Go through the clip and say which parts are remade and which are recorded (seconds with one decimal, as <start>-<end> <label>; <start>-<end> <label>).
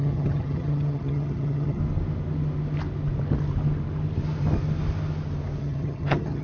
0.0-1.8 remade; 1.8-5.6 recorded; 5.6-6.4 remade